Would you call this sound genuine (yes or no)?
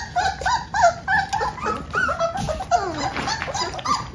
yes